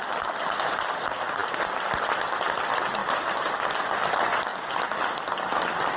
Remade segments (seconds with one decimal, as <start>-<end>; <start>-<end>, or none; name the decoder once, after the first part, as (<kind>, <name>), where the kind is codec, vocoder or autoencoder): none